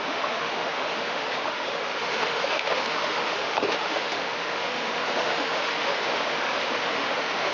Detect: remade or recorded remade